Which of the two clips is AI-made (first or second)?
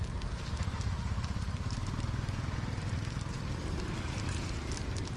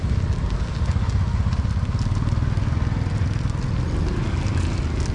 first